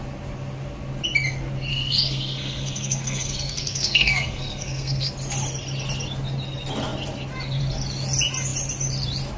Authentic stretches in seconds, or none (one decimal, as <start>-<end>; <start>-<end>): 0.0-1.7; 5.1-9.4